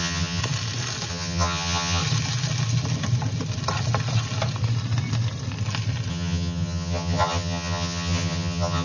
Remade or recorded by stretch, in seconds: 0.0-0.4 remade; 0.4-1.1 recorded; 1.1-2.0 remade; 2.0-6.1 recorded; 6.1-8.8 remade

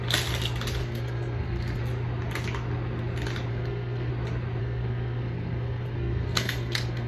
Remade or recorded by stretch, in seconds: 0.0-0.8 recorded; 0.8-1.8 remade; 1.8-3.5 recorded; 3.5-4.1 remade; 4.1-4.6 recorded; 4.6-7.1 remade

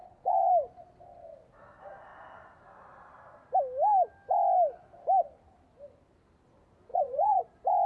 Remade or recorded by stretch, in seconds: 0.0-0.5 remade; 0.5-6.9 recorded; 6.9-7.4 remade; 7.4-7.9 recorded

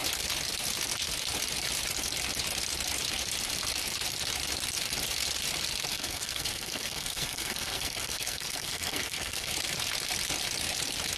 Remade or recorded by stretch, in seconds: 0.0-5.9 recorded; 5.9-9.5 remade; 9.5-11.2 recorded

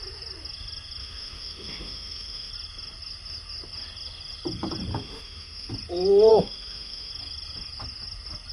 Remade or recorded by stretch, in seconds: 0.0-1.0 recorded; 1.0-2.5 remade; 2.5-4.9 recorded; 4.9-5.7 remade; 5.7-6.3 recorded; 6.3-7.1 remade; 7.1-8.5 recorded

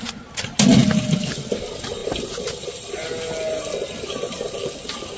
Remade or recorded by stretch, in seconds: 0.0-5.2 recorded

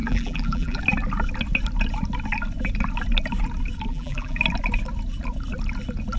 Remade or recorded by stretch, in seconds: 0.0-0.8 remade; 0.8-3.9 recorded; 3.9-4.4 remade; 4.4-6.2 recorded